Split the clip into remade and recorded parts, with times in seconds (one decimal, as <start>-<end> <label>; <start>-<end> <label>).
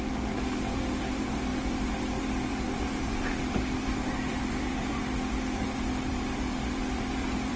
0.0-7.6 remade